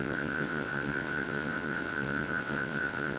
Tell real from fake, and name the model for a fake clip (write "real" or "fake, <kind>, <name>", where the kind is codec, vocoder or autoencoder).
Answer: fake, vocoder, WaveNeXt